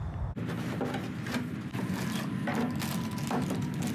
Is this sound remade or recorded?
recorded